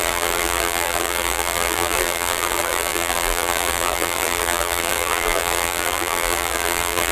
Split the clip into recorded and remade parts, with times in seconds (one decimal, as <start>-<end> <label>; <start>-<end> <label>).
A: 0.0-7.1 remade